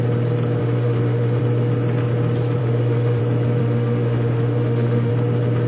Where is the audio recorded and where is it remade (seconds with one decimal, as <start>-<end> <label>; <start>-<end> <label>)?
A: 0.0-0.6 recorded; 0.6-1.4 remade; 1.4-2.6 recorded; 2.6-3.2 remade; 3.2-3.6 recorded; 3.6-5.1 remade; 5.1-5.7 recorded